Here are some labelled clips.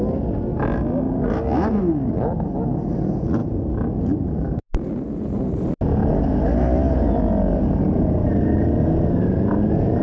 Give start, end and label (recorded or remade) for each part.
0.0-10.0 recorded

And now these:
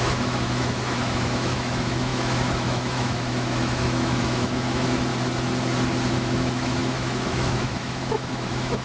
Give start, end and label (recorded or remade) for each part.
0.0-5.1 remade; 5.1-6.1 recorded; 6.1-8.8 remade

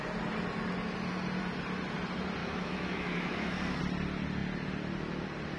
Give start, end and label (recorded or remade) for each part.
0.0-2.4 recorded; 2.4-3.8 remade; 3.8-5.6 recorded

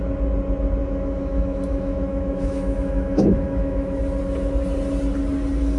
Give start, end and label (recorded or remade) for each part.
0.0-0.8 recorded; 0.8-4.0 remade; 4.0-5.8 recorded